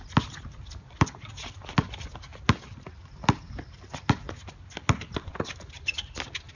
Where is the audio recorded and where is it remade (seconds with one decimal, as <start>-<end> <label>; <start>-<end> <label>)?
0.0-6.6 recorded